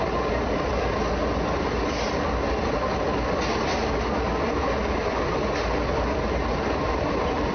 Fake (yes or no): no